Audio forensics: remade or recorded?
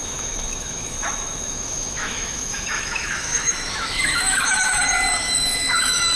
remade